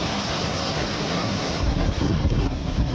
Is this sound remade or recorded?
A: remade